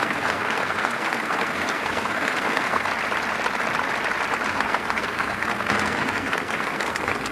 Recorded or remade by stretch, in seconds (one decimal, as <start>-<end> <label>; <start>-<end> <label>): 0.0-2.9 remade; 2.9-4.5 recorded; 4.5-7.3 remade